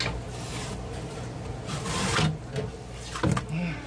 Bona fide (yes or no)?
yes